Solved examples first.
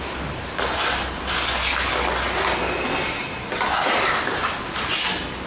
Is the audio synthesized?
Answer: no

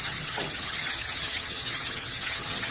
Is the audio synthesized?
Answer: yes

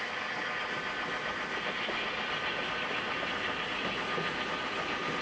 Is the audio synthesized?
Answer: no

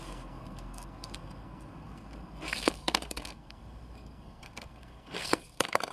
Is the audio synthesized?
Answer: yes